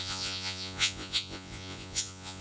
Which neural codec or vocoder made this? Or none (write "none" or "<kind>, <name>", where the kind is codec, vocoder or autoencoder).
vocoder, Vocos